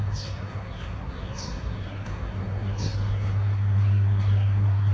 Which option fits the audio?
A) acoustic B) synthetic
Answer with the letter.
B